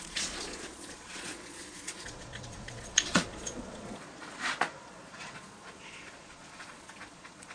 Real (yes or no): no